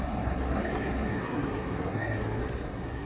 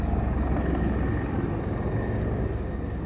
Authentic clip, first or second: second